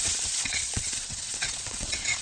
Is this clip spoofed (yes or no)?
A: yes